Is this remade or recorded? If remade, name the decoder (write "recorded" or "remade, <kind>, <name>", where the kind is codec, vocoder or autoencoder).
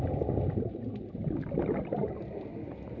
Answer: recorded